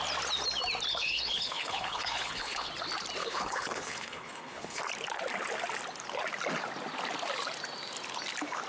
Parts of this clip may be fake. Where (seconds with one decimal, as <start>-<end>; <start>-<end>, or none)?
0.9-2.7; 3.2-4.8